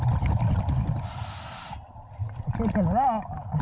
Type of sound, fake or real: real